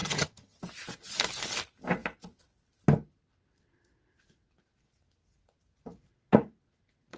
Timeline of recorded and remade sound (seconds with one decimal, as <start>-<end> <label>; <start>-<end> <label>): 0.0-0.6 remade; 0.6-7.2 recorded